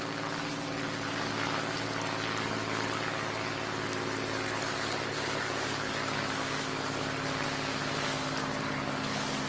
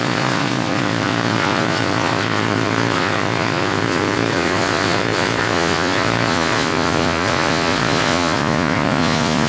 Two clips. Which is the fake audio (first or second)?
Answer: second